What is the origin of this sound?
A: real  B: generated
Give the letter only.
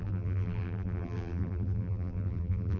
B